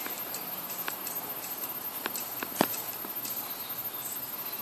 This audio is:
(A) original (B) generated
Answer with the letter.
B